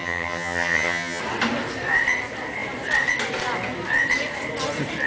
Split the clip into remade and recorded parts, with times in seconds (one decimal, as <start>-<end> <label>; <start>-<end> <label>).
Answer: 0.0-1.2 remade; 1.2-5.1 recorded